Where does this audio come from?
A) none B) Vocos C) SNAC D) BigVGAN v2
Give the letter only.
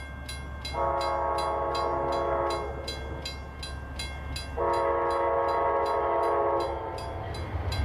A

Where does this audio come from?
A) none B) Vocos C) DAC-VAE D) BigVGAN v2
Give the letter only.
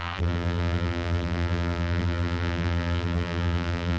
D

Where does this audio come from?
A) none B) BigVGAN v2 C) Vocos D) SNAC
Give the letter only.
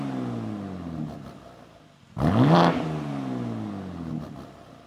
A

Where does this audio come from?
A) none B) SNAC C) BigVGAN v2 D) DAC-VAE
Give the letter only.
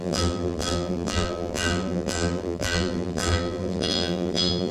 C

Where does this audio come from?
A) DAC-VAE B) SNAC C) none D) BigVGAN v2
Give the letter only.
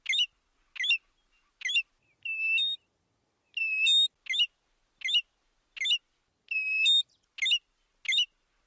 C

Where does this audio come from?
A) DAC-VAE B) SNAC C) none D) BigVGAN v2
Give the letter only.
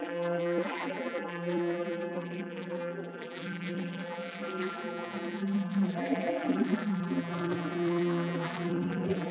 D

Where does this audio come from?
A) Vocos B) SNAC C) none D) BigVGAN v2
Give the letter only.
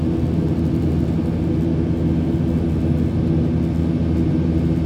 C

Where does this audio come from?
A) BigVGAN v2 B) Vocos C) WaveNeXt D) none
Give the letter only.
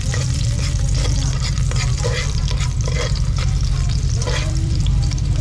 A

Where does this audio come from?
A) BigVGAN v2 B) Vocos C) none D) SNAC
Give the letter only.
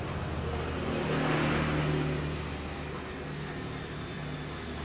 C